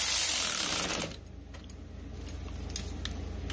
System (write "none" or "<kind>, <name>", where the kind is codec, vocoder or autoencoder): none